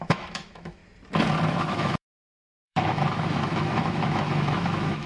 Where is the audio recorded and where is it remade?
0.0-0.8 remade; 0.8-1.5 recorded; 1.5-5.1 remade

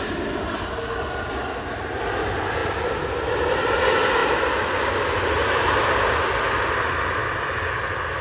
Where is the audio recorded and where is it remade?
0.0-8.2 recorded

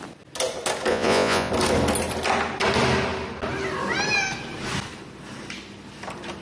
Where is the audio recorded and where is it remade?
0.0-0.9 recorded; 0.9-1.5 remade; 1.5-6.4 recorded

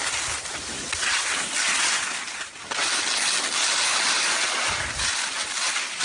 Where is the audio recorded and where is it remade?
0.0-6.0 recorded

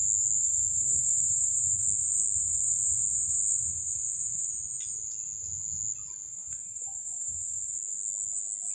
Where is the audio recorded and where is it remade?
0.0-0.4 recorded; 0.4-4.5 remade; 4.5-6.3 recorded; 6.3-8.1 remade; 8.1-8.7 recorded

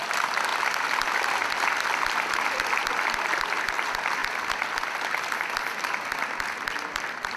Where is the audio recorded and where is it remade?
0.0-7.4 recorded